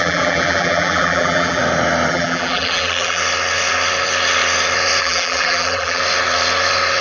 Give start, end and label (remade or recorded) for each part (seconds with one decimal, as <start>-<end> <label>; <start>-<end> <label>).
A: 0.0-1.6 remade; 1.6-2.1 recorded; 2.1-3.2 remade; 3.2-5.0 recorded; 5.0-6.0 remade; 6.0-7.0 recorded